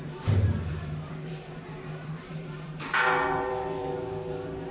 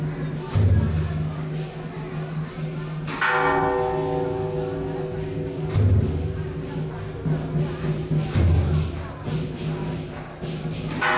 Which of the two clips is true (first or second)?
second